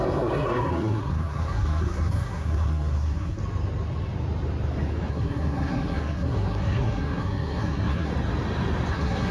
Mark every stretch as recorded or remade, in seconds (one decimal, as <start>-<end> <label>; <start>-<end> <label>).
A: 0.0-3.4 remade; 3.4-5.1 recorded; 5.1-8.1 remade; 8.1-8.9 recorded; 8.9-9.3 remade